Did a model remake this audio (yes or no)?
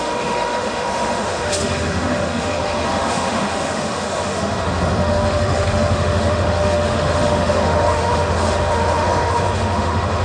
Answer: yes